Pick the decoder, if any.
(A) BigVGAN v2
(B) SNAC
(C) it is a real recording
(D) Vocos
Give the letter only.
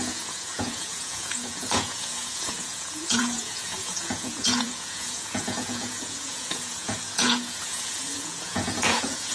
D